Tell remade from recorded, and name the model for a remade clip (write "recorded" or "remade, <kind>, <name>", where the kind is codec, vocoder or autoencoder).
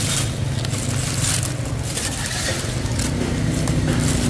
recorded